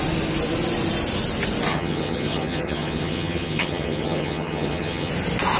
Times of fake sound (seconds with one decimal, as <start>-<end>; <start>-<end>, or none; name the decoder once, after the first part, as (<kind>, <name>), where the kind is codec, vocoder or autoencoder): 1.7-5.1 (vocoder, HiFi-GAN)